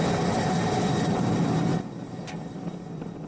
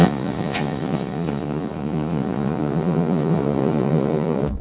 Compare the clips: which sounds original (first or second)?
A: first